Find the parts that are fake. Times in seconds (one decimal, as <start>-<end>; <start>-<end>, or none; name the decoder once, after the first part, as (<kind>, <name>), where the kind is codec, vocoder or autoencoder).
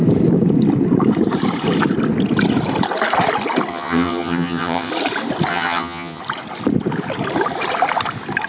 3.7-4.9 (vocoder, HiFi-GAN); 5.5-6.2